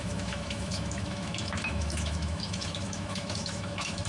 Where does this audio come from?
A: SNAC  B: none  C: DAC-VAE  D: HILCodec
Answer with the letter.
C